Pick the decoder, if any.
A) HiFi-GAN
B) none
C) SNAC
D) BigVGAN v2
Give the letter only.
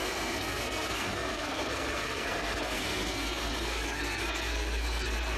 C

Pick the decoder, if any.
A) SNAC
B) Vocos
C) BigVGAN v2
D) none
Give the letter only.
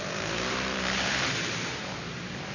C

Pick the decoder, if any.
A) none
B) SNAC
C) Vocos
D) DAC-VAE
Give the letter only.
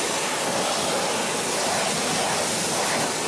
A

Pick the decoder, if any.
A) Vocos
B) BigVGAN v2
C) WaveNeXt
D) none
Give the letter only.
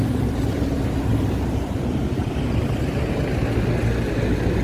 D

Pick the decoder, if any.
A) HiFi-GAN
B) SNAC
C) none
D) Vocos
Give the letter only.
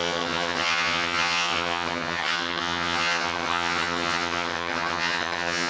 A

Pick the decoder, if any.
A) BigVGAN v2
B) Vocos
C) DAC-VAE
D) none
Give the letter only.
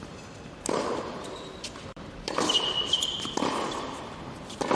A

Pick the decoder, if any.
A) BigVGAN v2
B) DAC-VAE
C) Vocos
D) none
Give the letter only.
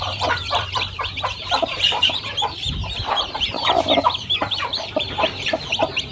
A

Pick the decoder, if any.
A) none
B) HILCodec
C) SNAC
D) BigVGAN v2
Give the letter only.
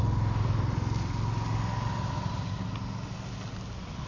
A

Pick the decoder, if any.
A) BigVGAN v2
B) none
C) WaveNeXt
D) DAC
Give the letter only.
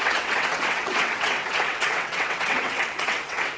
C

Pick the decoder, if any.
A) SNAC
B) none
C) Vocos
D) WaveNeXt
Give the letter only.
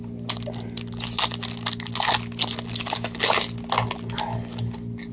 B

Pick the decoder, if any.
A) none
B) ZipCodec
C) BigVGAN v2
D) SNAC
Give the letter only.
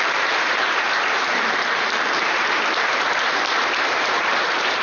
C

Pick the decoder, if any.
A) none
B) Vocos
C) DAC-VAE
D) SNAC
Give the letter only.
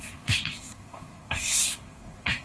D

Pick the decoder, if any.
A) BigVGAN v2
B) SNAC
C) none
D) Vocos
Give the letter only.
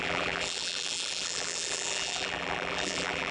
A